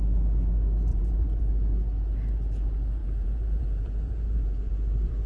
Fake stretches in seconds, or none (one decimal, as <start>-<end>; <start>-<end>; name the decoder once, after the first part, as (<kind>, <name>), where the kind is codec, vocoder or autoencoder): 0.9-1.4 (vocoder, BigVGAN v2); 3.0-4.7